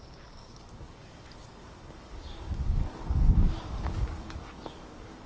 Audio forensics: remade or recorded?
remade